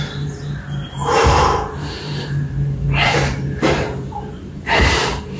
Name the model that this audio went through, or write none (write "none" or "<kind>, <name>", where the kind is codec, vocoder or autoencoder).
vocoder, BigVGAN v2